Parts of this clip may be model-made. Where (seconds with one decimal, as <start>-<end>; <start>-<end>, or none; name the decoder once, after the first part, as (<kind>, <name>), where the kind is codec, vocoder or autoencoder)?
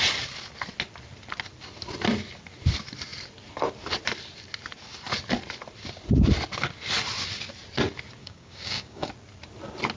8.2-9.1 (codec, DAC)